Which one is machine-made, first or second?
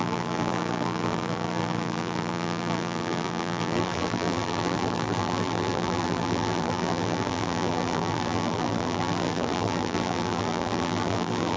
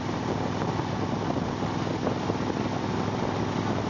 first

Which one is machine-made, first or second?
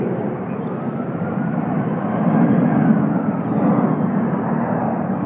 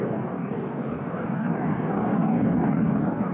second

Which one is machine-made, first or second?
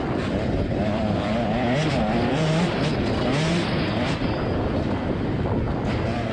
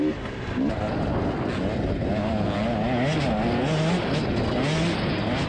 first